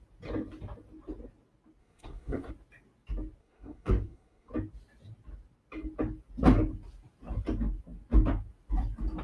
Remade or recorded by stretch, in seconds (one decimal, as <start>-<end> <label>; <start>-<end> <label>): 0.0-1.8 recorded; 1.8-2.5 remade; 2.5-3.4 recorded; 3.4-4.5 remade; 4.5-9.2 recorded